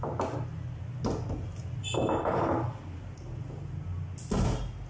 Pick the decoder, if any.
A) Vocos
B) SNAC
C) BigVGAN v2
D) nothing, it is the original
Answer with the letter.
D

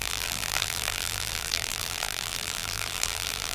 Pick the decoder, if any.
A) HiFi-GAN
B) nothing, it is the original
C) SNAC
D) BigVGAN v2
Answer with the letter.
D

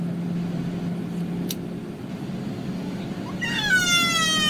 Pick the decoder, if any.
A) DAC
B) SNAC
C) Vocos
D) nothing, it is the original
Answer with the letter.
D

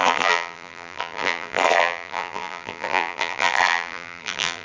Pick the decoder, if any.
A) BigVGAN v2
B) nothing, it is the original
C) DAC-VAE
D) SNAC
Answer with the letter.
A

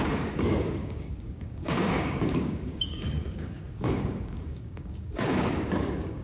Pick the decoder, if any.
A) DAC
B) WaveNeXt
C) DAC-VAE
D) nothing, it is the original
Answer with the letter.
A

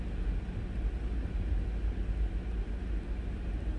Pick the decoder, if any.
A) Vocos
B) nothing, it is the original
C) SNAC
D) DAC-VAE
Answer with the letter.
B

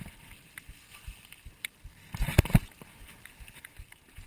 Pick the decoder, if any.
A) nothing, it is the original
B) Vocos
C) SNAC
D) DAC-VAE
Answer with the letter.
A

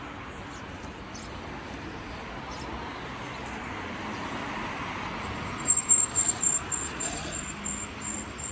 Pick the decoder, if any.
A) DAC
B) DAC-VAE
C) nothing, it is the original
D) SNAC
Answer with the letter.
C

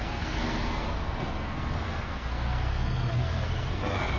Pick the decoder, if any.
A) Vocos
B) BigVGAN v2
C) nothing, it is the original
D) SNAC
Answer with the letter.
D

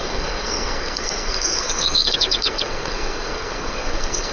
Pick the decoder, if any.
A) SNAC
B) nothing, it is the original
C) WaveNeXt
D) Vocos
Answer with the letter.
A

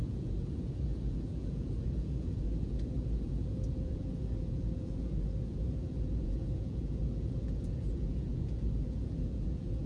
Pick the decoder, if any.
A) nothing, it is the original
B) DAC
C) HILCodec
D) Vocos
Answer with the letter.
D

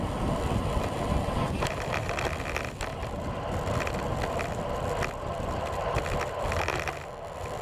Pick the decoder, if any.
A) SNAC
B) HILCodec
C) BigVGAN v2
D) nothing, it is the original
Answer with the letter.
D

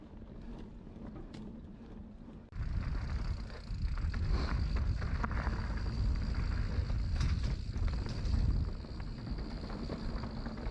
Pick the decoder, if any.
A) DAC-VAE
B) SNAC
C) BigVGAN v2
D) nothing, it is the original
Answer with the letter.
D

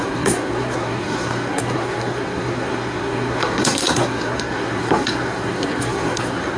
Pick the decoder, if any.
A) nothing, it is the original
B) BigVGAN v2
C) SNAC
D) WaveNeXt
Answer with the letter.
C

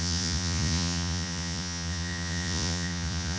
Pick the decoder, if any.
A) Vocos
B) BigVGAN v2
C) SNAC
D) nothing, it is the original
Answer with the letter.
A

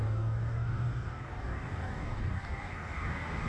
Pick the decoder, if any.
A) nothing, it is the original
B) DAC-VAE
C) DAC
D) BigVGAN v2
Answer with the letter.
C